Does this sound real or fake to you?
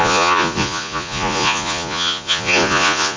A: fake